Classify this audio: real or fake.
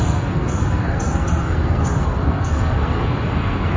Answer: fake